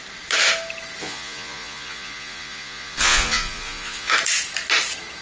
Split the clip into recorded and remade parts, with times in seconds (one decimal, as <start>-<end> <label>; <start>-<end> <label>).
0.0-1.0 recorded; 1.0-4.1 remade; 4.1-5.2 recorded